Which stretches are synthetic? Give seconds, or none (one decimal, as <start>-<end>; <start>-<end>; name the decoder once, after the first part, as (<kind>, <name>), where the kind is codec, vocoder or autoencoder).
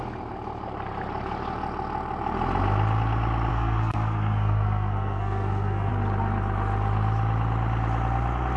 3.5-5.9 (codec, SNAC)